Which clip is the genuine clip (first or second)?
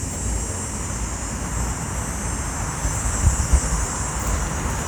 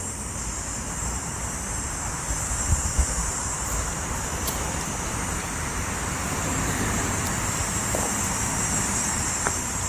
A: first